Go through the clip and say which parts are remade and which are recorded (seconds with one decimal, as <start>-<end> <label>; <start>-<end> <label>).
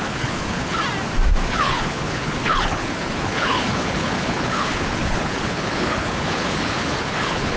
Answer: 0.0-0.8 remade; 0.8-1.5 recorded; 1.5-7.6 remade